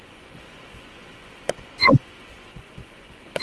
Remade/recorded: remade